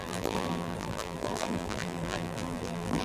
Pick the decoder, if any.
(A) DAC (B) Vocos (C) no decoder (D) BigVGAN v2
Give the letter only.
D